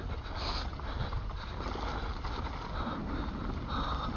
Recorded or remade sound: recorded